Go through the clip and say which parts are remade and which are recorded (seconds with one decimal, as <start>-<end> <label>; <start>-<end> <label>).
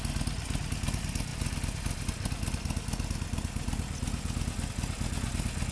0.0-5.7 recorded